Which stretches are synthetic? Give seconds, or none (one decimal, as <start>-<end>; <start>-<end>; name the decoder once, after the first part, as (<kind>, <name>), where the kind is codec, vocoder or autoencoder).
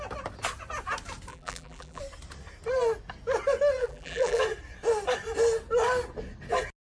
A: 1.3-2.0 (vocoder, BigVGAN v2); 3.8-4.4